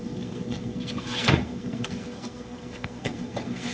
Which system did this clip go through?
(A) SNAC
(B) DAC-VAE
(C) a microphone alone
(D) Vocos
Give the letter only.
A